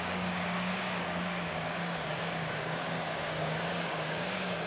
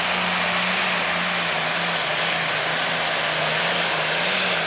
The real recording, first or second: second